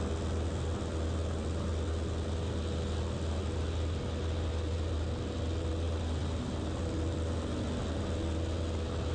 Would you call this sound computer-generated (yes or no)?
no